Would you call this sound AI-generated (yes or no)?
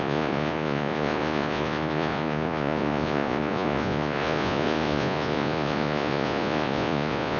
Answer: yes